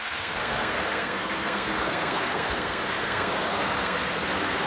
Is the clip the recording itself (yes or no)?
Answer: no